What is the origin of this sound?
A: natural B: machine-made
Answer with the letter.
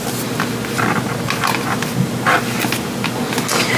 A